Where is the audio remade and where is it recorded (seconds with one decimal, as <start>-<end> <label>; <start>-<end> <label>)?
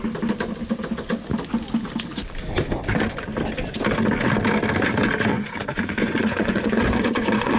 0.0-5.3 recorded; 5.3-7.6 remade